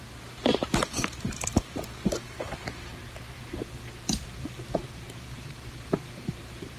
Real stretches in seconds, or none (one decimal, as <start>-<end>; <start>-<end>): none